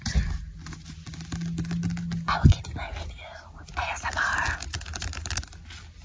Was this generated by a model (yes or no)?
no